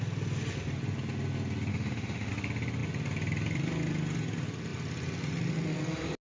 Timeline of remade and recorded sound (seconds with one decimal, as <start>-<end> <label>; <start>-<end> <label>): 0.0-1.7 recorded; 1.7-2.3 remade; 2.3-6.2 recorded